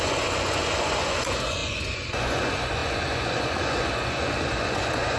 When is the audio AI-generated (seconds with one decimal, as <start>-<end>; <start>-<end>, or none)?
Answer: 0.0-5.2